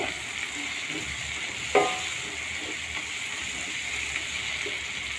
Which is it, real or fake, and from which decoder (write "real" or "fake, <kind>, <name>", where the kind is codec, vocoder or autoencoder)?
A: real